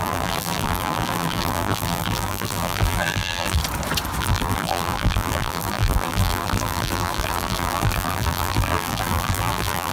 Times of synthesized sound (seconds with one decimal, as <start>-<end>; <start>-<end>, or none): 0.0-3.6; 4.2-9.9